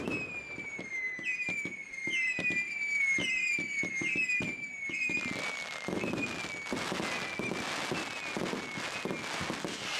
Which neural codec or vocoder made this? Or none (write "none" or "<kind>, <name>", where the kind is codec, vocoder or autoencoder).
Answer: none